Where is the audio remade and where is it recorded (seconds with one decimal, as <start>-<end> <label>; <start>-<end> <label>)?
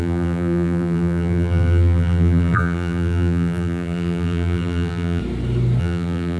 0.0-5.2 remade; 5.2-5.8 recorded; 5.8-6.4 remade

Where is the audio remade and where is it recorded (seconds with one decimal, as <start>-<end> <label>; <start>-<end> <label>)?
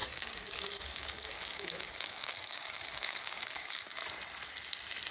0.0-4.0 remade; 4.0-5.1 recorded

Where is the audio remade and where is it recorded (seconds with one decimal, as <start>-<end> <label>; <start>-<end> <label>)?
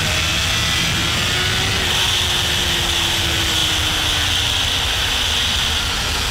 0.0-1.0 recorded; 1.0-1.6 remade; 1.6-3.6 recorded; 3.6-5.8 remade; 5.8-6.3 recorded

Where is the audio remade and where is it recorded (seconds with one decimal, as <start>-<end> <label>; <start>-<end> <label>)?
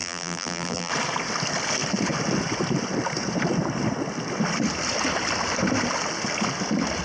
0.0-0.9 remade; 0.9-7.0 recorded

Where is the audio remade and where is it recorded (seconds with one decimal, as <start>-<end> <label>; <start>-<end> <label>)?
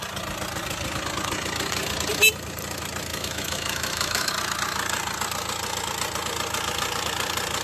0.0-3.1 recorded; 3.1-4.3 remade; 4.3-7.6 recorded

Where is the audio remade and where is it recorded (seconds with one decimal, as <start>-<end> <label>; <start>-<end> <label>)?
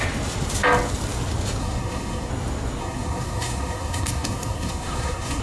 0.0-1.6 recorded; 1.6-2.3 remade; 2.3-2.8 recorded; 2.8-5.4 remade